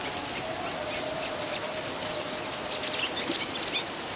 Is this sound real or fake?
real